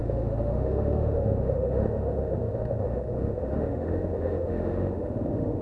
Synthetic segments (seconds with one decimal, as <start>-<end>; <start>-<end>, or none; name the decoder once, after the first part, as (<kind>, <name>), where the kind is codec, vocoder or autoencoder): 0.0-5.6 (autoencoder, DAC-VAE)